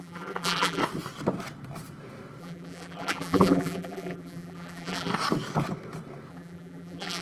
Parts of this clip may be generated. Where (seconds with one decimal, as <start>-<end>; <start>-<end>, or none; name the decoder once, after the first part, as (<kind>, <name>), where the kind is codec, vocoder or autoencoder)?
0.0-0.8 (vocoder, BigVGAN v2); 2.4-5.1; 6.3-7.2